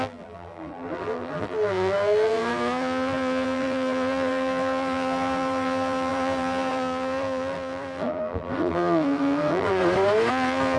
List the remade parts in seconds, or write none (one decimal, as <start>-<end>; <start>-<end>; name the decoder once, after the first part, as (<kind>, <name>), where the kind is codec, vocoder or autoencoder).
0.0-9.8 (vocoder, BigVGAN v2); 10.3-10.8